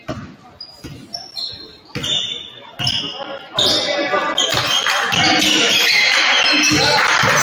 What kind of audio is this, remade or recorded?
recorded